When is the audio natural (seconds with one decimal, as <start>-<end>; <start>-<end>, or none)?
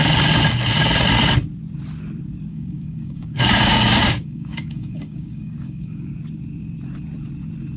0.0-2.5; 6.1-7.8